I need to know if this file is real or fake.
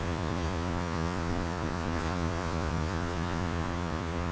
fake